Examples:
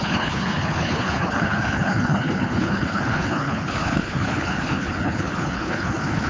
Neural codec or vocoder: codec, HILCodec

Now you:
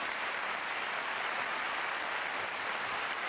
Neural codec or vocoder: none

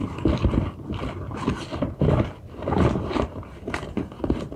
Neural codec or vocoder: vocoder, BigVGAN v2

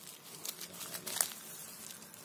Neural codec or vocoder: none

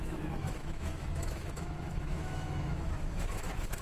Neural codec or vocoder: autoencoder, DAC-VAE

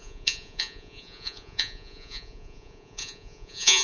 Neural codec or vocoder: vocoder, Vocos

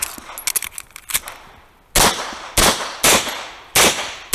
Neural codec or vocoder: none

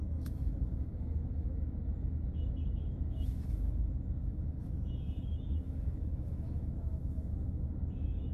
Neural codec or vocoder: autoencoder, DAC-VAE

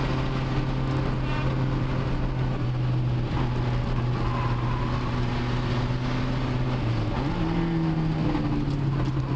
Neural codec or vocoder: none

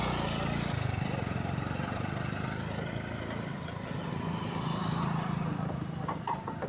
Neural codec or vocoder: none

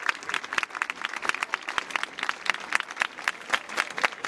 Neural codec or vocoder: none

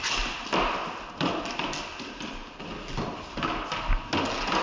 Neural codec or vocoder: none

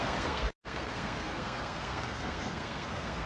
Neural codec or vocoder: codec, SNAC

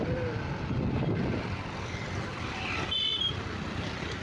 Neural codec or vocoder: none